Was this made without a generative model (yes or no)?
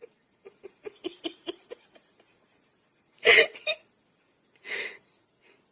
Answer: no